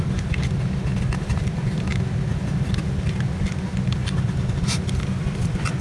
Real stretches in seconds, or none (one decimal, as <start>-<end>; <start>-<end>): 0.0-5.8